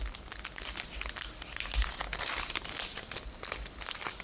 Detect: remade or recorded recorded